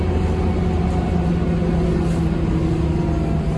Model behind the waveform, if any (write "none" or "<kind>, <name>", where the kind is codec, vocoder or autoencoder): none